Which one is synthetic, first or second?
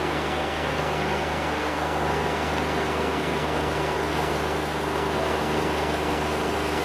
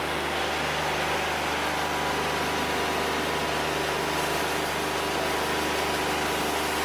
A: first